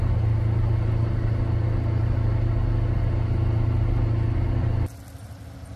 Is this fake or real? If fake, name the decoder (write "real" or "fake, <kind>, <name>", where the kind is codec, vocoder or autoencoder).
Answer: real